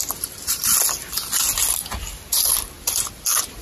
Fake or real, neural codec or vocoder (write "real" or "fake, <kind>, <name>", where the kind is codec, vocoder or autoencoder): real